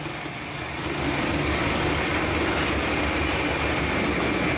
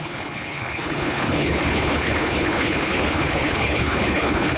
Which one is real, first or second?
first